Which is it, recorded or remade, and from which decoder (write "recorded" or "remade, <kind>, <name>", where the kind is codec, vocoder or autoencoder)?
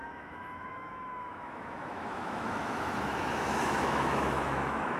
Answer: remade, autoencoder, DAC-VAE